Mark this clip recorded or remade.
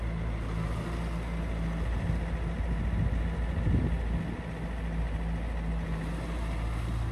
recorded